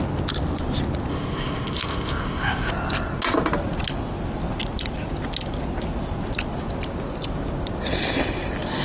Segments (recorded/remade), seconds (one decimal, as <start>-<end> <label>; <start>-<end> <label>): 0.0-1.1 recorded; 1.1-2.7 remade; 2.7-8.8 recorded